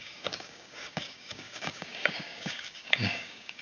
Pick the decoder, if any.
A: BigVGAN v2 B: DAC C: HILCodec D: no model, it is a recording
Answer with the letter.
B